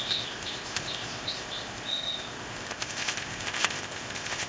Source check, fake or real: fake